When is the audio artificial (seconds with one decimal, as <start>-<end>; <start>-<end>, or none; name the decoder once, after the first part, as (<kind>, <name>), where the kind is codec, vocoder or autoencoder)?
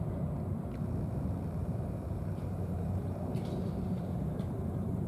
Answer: 1.6-5.1 (vocoder, BigVGAN v2)